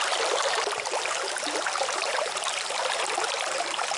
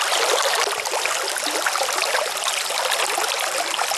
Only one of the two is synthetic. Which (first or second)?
first